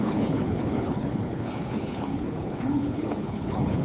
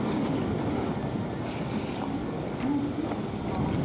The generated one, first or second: first